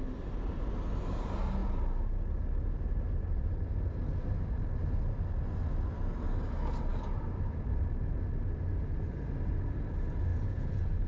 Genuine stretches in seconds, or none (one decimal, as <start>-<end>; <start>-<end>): 0.0-10.3